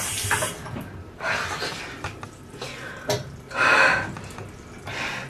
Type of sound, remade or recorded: recorded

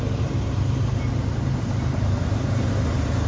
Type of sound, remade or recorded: remade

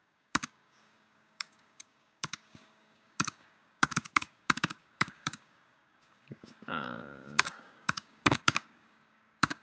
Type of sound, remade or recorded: remade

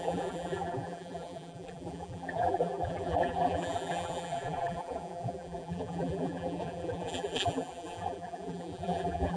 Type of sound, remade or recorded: remade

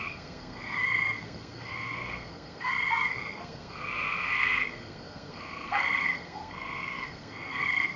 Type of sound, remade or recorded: remade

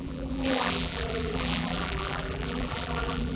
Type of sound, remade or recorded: remade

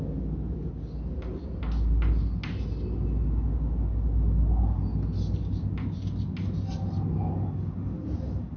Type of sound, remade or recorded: recorded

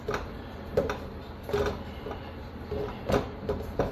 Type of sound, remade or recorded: recorded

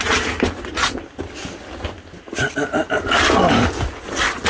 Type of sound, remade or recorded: recorded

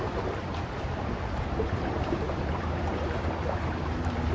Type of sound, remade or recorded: remade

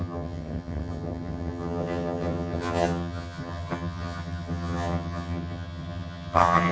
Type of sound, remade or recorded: remade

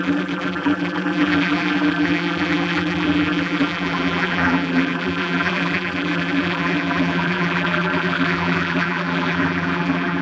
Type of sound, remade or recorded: remade